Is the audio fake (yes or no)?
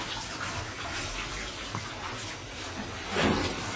no